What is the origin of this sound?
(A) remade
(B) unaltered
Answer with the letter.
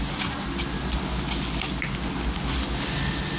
B